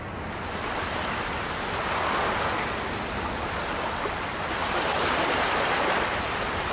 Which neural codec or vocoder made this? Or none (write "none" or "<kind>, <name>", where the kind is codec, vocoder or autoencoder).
none